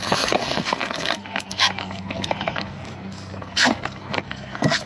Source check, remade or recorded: remade